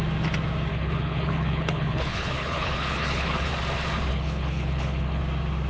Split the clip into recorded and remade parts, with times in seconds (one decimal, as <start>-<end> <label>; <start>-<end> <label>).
0.0-0.7 recorded; 0.7-3.5 remade; 3.5-4.1 recorded; 4.1-5.2 remade; 5.2-5.7 recorded